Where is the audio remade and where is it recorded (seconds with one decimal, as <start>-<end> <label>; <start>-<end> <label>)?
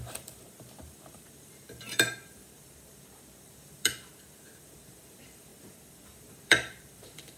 0.0-7.4 remade